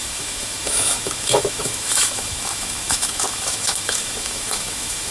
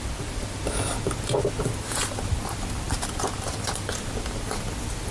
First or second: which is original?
second